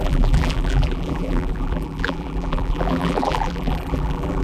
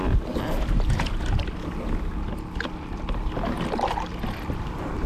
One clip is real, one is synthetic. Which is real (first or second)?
second